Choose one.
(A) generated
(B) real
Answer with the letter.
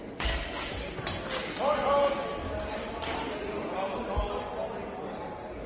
B